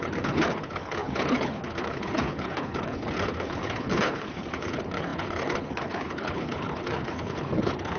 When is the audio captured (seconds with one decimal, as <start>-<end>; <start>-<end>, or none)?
none

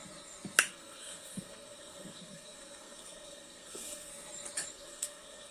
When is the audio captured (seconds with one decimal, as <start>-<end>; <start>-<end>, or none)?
0.0-0.7; 4.1-4.7

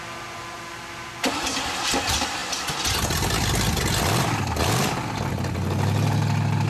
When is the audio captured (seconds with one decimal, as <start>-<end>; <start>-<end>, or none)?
0.0-6.7

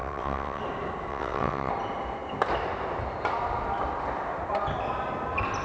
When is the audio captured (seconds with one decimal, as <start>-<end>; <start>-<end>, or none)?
0.6-1.1; 1.7-5.6

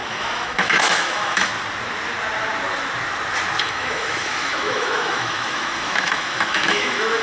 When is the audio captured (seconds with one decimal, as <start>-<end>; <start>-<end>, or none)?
1.5-3.6

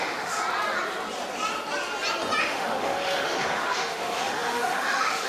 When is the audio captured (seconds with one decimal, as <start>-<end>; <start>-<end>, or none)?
0.4-2.4

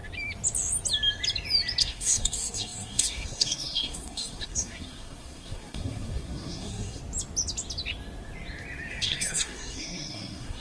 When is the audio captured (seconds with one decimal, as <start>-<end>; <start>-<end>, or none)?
0.0-1.8; 7.0-8.9

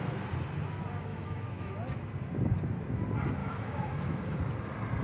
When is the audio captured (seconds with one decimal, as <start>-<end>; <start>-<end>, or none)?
0.0-1.1; 1.7-3.4; 4.4-5.0